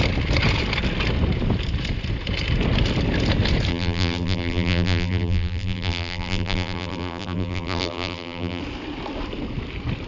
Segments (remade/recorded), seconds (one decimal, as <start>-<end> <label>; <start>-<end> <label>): 0.0-3.7 recorded; 3.7-8.6 remade; 8.6-10.1 recorded